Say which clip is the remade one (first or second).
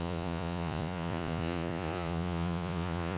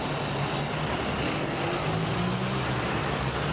first